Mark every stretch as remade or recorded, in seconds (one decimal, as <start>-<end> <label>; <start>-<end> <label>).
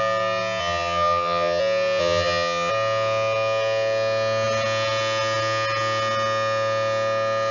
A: 0.0-0.6 recorded; 0.6-1.6 remade; 1.6-2.0 recorded; 2.0-2.7 remade; 2.7-7.5 recorded